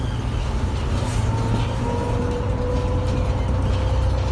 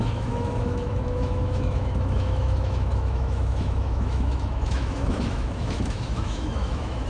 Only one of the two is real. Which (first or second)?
first